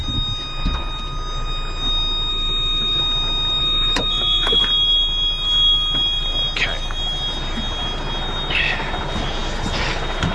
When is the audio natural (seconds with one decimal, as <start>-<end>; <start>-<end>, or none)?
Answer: 0.0-2.3; 3.0-3.6; 4.6-10.3